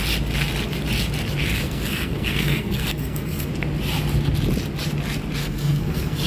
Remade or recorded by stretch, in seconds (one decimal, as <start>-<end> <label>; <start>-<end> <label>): 0.0-1.4 recorded; 1.4-3.5 remade; 3.5-5.4 recorded; 5.4-6.3 remade